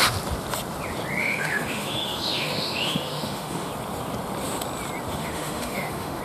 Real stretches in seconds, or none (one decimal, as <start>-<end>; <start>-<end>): 0.0-1.2; 3.7-5.2

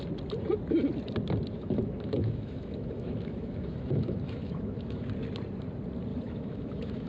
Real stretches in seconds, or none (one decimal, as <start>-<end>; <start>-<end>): 0.0-1.5; 5.1-6.1

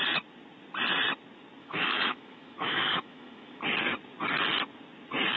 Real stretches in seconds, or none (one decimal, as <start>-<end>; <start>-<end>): 0.0-1.6; 3.6-5.4

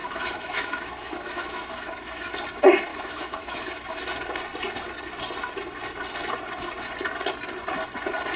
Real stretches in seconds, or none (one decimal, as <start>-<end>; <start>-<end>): 2.3-2.9; 3.9-8.4